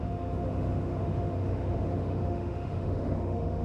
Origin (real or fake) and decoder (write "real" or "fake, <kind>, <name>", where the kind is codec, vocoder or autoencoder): fake, autoencoder, DAC-VAE